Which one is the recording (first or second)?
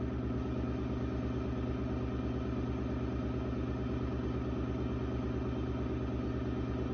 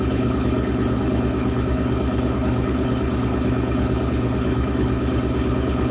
first